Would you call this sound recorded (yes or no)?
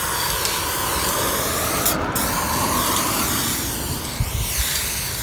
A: yes